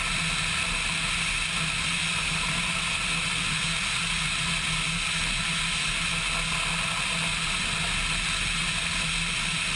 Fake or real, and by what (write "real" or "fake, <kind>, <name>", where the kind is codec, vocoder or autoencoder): real